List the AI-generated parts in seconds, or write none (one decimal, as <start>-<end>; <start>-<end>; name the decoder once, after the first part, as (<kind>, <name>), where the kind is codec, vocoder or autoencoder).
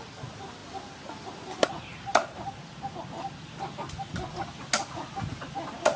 none